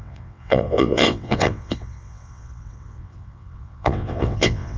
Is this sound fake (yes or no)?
yes